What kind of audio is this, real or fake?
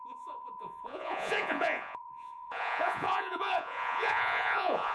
fake